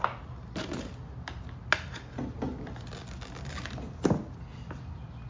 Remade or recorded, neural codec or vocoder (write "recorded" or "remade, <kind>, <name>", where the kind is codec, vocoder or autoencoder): recorded